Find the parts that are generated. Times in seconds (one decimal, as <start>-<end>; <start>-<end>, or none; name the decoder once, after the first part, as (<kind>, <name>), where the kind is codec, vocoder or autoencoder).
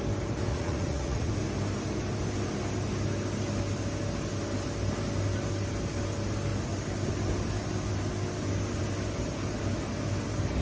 0.5-1.3 (vocoder, Vocos)